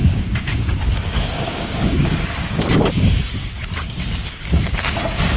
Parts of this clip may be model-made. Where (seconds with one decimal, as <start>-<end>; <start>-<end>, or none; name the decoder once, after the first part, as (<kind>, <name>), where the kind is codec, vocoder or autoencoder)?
0.0-5.4 (codec, DAC)